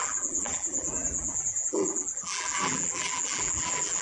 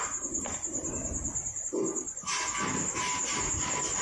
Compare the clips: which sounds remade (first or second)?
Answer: first